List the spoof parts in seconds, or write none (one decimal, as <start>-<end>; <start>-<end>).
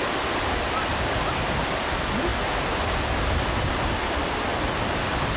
none